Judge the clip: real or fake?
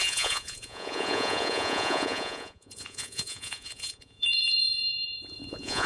fake